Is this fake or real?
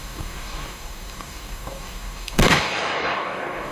fake